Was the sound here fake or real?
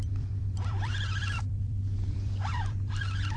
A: fake